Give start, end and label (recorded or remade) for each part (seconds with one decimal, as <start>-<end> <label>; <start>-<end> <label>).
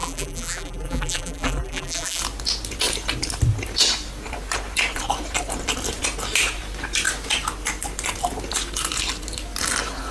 0.0-2.2 remade; 2.2-10.1 recorded